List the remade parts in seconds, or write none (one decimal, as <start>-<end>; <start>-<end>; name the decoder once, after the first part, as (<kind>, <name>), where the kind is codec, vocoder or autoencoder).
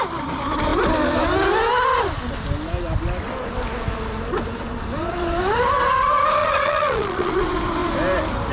6.4-7.3 (vocoder, Vocos)